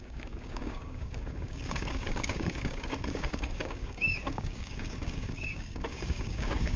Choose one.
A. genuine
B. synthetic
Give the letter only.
B